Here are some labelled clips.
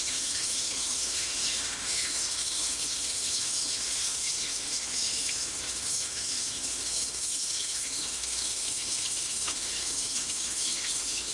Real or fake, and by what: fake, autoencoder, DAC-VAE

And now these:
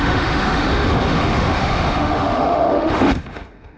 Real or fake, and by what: fake, autoencoder, DAC-VAE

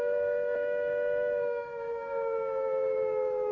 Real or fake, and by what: fake, autoencoder, DAC-VAE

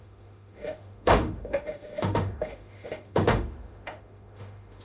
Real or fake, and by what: fake, autoencoder, DAC-VAE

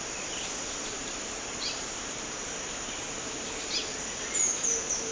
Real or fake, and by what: real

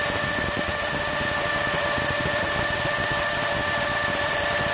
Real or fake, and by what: real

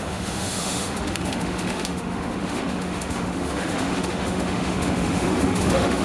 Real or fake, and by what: fake, autoencoder, DAC-VAE